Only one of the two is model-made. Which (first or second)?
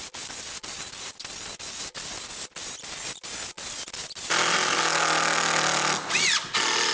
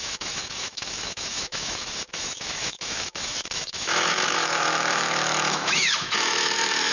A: second